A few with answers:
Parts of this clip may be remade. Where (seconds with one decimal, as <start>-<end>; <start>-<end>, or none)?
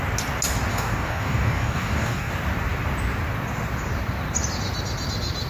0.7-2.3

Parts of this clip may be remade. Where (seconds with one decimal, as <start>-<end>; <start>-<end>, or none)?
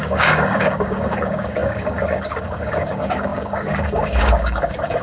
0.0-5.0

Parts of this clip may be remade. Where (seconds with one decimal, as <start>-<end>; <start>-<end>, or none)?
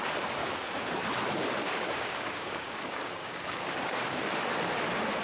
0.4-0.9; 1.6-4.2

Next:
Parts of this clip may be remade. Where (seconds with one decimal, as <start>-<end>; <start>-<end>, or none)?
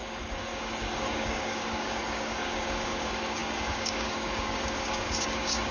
0.0-5.7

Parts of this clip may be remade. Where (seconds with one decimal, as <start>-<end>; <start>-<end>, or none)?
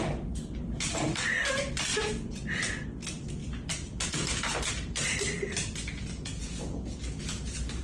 none